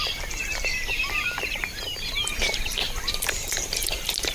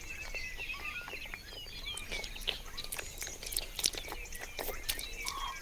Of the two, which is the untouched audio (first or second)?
second